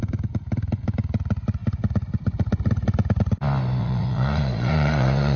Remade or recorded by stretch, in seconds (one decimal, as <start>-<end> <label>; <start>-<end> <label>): 0.0-3.8 recorded; 3.8-5.4 remade